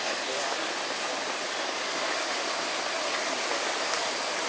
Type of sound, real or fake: real